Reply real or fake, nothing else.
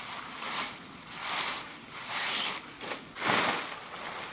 real